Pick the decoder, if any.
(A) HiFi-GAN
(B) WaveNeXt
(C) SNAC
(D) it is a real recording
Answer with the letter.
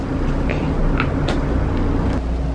D